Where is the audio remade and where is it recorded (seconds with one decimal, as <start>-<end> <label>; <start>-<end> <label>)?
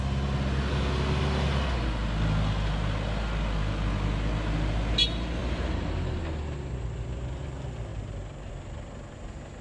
0.0-5.4 recorded; 5.4-6.2 remade; 6.2-7.9 recorded; 7.9-8.5 remade; 8.5-9.6 recorded